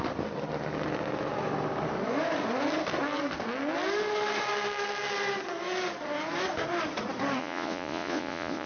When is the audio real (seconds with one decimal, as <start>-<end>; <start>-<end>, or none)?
0.0-7.4